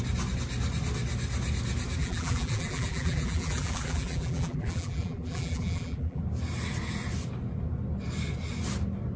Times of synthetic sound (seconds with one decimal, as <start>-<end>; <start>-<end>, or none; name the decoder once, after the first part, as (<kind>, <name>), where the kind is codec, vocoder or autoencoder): 2.0-6.2 (vocoder, BigVGAN v2)